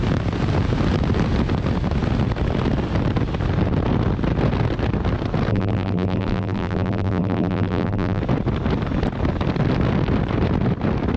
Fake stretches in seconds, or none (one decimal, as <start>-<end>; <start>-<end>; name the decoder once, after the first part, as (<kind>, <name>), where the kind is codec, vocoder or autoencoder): 5.5-8.2 (vocoder, BigVGAN v2)